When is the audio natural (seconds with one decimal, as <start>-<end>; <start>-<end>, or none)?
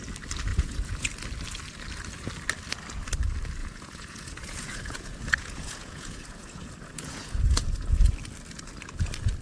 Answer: 0.0-0.5; 1.1-3.6; 8.1-9.4